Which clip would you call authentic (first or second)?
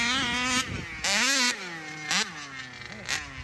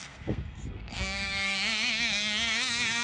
first